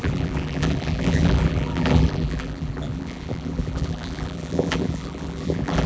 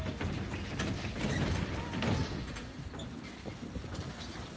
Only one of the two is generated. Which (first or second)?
first